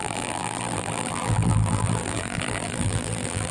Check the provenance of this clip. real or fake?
fake